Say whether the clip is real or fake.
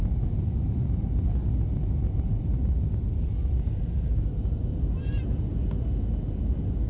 real